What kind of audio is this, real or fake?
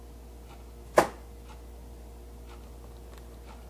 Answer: real